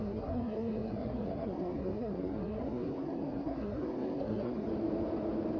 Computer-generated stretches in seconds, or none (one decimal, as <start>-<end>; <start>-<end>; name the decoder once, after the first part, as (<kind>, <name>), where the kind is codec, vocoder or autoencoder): 0.0-4.7 (codec, SNAC)